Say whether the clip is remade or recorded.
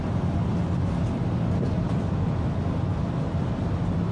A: recorded